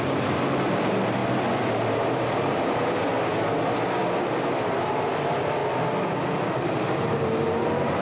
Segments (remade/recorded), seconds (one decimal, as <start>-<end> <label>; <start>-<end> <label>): 0.0-1.2 remade; 1.2-1.8 recorded; 1.8-3.0 remade; 3.0-4.5 recorded; 4.5-5.6 remade; 5.6-6.5 recorded; 6.5-8.0 remade